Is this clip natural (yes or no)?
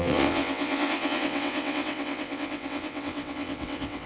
no